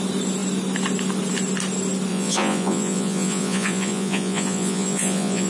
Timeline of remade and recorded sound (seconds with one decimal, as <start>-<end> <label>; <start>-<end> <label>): 0.0-2.1 recorded; 2.1-5.5 remade